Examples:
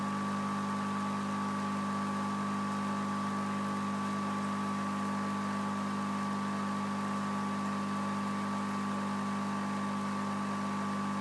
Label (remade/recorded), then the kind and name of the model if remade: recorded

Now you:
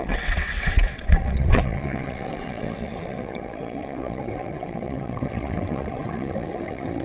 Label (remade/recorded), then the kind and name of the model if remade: remade, vocoder, WaveNeXt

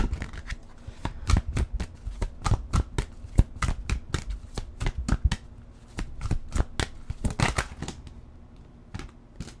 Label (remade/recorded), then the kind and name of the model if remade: recorded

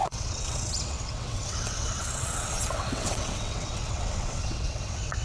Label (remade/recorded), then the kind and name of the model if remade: remade, vocoder, WaveNeXt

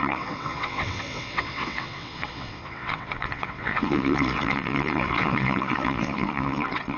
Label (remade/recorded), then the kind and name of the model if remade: remade, vocoder, WaveNeXt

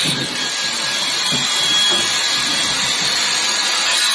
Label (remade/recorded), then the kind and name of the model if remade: recorded